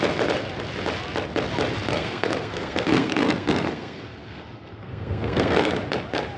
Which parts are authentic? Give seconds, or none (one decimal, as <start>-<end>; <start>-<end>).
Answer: 0.0-1.9; 5.7-6.4